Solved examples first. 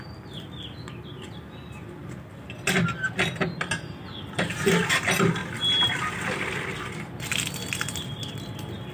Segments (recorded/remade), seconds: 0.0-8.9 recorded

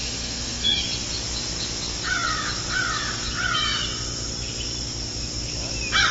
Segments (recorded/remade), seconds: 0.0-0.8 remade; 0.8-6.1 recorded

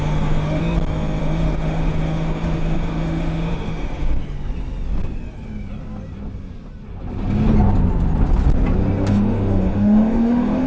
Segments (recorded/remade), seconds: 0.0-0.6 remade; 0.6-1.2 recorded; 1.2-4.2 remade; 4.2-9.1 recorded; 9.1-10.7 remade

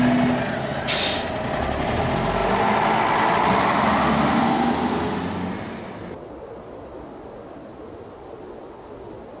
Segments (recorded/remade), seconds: 0.0-9.4 recorded

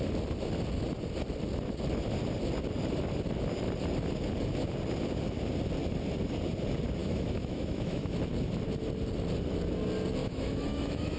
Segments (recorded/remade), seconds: 0.0-7.0 recorded; 7.0-8.2 remade; 8.2-10.2 recorded; 10.2-11.2 remade

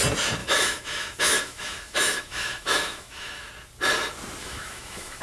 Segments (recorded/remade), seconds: 0.0-0.4 recorded; 0.4-3.5 remade; 3.5-4.4 recorded; 4.4-5.2 remade

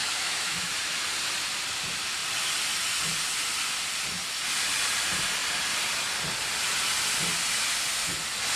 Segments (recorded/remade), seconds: 0.0-0.7 remade; 0.7-8.6 recorded